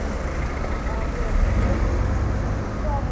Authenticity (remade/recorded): recorded